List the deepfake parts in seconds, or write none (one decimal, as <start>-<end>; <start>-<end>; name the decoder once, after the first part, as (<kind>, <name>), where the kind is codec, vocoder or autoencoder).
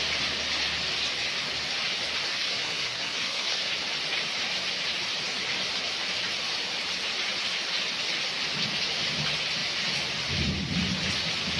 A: 2.3-3.7 (codec, SNAC)